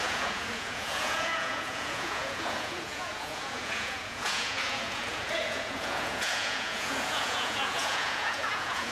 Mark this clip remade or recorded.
remade